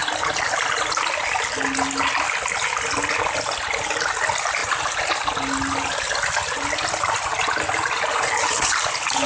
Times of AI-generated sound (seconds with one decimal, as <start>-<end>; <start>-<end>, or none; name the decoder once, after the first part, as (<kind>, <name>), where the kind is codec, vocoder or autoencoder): none